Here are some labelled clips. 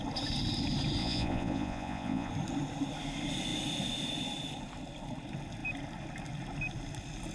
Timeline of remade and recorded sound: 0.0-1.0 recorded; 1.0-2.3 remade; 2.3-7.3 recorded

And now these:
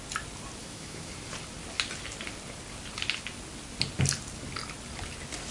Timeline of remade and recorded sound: 0.0-0.6 recorded; 0.6-1.1 remade; 1.1-5.5 recorded

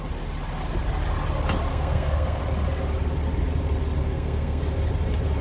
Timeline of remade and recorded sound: 0.0-1.7 recorded; 1.7-2.4 remade; 2.4-4.0 recorded; 4.0-4.6 remade; 4.6-5.4 recorded